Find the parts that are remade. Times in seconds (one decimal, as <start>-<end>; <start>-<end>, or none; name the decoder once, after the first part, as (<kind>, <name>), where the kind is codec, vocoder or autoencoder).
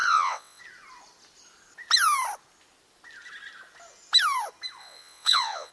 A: 0.0-0.6 (vocoder, WaveNeXt); 4.8-5.7